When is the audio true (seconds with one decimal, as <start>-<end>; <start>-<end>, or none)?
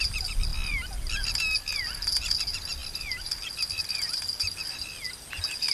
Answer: 0.0-5.7